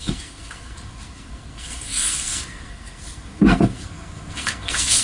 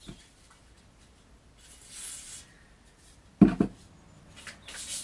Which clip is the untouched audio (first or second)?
second